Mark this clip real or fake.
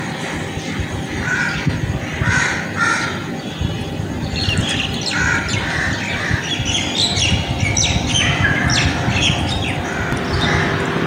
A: real